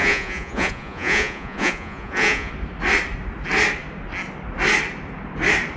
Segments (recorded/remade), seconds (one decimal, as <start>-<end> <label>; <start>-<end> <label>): 0.0-2.5 remade; 2.5-5.8 recorded

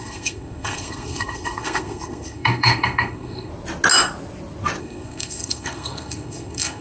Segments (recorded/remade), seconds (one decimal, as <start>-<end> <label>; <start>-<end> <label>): 0.0-3.5 remade; 3.5-4.8 recorded; 4.8-6.8 remade